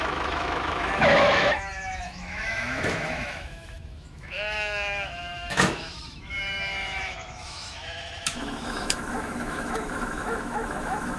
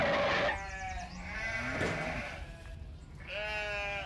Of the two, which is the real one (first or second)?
second